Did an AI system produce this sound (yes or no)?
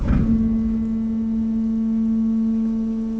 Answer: no